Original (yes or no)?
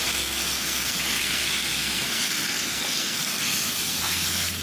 no